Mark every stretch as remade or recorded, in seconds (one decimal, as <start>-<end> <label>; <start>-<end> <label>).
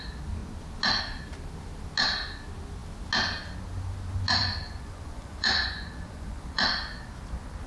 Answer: 0.0-4.4 recorded; 4.4-6.6 remade; 6.6-7.7 recorded